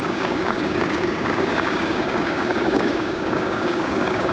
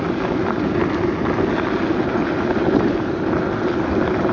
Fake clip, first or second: first